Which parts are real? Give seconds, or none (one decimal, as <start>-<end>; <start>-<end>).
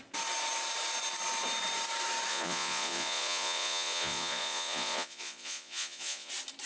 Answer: 0.0-2.3; 6.3-6.7